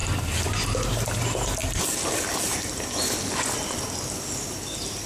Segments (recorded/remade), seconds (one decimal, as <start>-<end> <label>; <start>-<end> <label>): 0.0-5.1 recorded